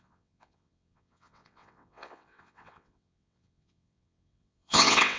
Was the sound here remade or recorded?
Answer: remade